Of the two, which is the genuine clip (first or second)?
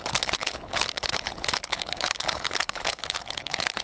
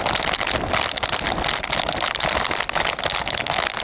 second